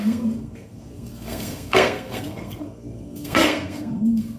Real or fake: fake